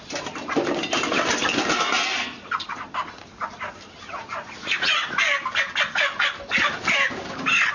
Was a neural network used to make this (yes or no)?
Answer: no